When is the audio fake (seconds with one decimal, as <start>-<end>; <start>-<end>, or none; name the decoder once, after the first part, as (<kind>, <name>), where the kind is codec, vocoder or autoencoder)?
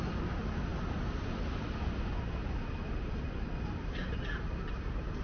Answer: none